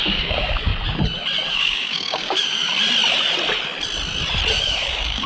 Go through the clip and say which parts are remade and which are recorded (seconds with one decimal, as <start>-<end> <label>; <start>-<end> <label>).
0.0-0.7 remade; 0.7-1.5 recorded; 1.5-2.7 remade; 2.7-4.6 recorded; 4.6-5.3 remade